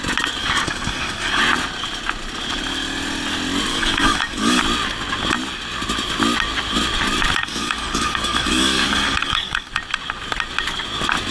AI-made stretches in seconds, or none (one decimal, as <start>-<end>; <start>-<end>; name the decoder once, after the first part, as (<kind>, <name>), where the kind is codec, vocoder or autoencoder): 0.4-1.4 (codec, DAC); 3.7-4.6; 7.4-9.7